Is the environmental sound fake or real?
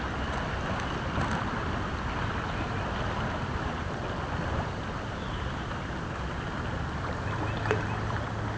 real